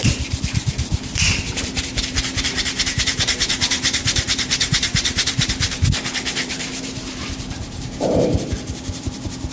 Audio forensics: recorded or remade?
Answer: remade